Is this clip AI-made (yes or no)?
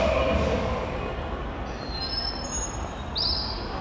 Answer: no